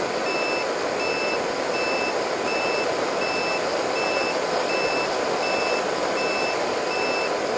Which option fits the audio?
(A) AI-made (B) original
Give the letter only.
B